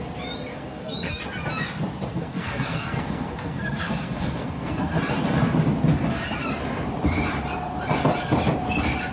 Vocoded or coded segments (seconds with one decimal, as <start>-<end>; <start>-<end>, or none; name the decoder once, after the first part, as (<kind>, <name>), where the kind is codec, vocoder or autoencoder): 0.5-1.2 (codec, SNAC); 2.1-5.0